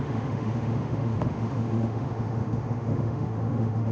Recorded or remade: remade